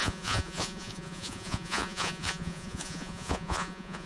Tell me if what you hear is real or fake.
fake